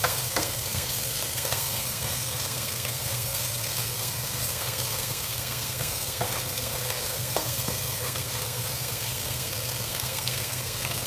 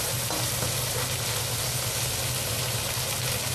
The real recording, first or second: second